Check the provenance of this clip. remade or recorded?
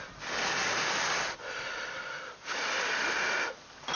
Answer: recorded